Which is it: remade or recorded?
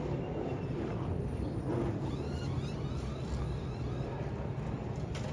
recorded